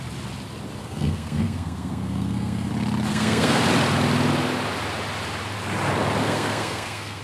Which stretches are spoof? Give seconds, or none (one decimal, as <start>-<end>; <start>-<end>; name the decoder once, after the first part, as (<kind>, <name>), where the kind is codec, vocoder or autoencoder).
0.8-2.7 (codec, SNAC); 3.1-3.6; 6.2-7.2